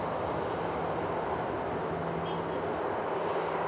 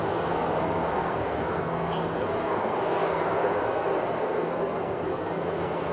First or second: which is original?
first